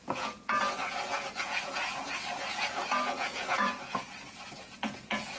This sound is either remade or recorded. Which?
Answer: remade